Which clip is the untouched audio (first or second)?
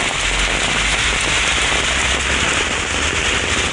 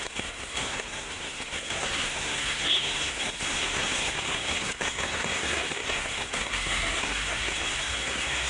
first